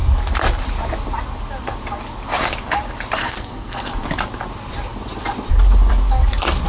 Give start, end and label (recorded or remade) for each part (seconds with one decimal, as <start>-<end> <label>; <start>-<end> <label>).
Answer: 0.0-3.2 recorded; 3.2-3.9 remade; 3.9-6.7 recorded